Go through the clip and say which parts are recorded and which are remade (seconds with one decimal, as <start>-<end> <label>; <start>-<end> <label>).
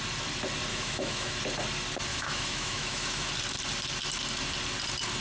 0.0-0.7 recorded; 0.7-1.4 remade; 1.4-2.1 recorded; 2.1-3.3 remade; 3.3-5.2 recorded